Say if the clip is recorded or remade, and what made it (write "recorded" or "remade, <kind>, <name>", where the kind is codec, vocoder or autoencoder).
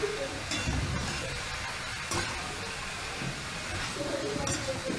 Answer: recorded